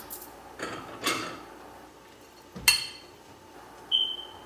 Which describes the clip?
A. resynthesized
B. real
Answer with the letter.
B